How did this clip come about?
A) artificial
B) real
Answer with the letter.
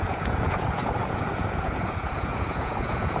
A